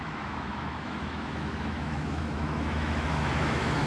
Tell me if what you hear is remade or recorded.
remade